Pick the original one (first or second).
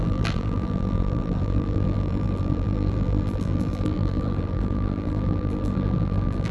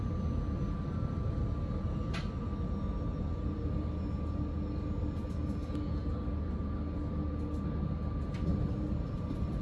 second